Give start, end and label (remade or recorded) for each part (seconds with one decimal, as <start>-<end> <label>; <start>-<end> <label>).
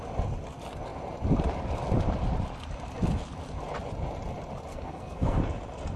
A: 0.0-4.7 recorded; 4.7-5.4 remade; 5.4-6.0 recorded